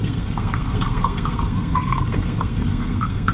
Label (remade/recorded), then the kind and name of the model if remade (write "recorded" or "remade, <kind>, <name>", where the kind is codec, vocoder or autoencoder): remade, codec, SNAC